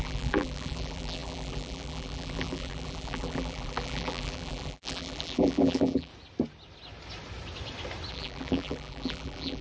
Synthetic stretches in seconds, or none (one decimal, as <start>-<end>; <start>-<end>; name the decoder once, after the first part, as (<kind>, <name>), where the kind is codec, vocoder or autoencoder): 0.0-6.1 (vocoder, BigVGAN v2); 8.1-9.6